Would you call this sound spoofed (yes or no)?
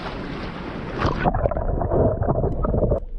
no